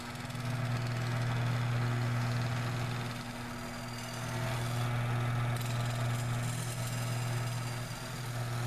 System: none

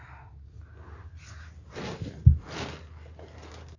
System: none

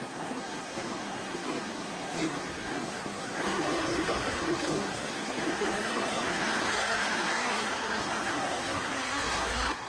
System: codec, SNAC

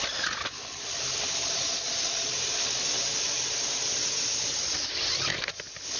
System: none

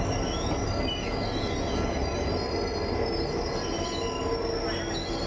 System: none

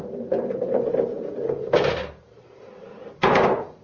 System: vocoder, BigVGAN v2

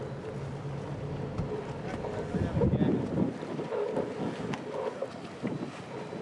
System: none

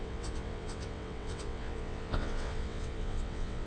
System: vocoder, WaveNeXt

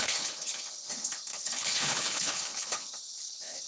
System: codec, HILCodec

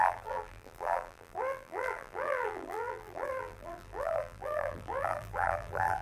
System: vocoder, BigVGAN v2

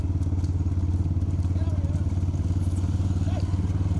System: none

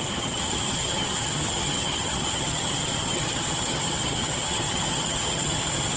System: vocoder, HiFi-GAN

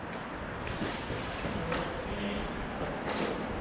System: none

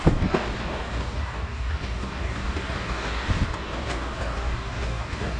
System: codec, DAC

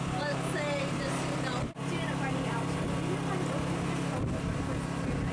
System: none